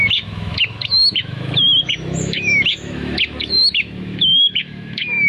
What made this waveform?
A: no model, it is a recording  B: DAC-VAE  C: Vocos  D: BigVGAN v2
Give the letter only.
B